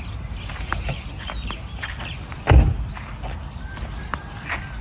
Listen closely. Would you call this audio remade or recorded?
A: recorded